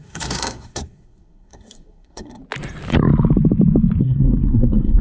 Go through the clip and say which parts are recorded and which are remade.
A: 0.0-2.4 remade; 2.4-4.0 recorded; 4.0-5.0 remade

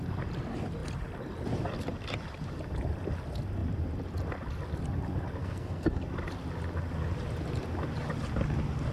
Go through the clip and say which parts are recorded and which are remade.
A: 0.0-5.4 recorded; 5.4-6.0 remade; 6.0-8.9 recorded

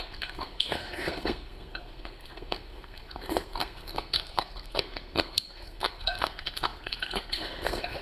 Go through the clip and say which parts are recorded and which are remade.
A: 0.0-8.0 remade

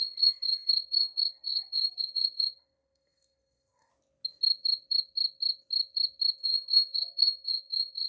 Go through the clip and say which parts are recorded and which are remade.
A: 0.0-3.9 remade; 3.9-6.4 recorded; 6.4-8.1 remade

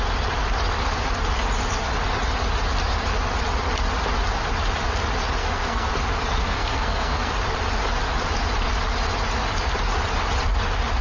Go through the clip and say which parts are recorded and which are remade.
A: 0.0-5.4 recorded; 5.4-5.9 remade; 5.9-6.4 recorded; 6.4-7.3 remade; 7.3-11.0 recorded

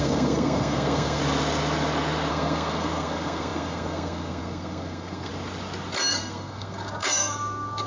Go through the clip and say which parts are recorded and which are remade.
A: 0.0-1.2 remade; 1.2-2.3 recorded; 2.3-5.3 remade; 5.3-6.1 recorded; 6.1-7.9 remade

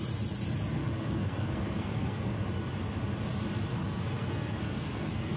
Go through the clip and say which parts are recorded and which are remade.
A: 0.0-0.8 recorded; 0.8-2.4 remade; 2.4-3.7 recorded; 3.7-5.4 remade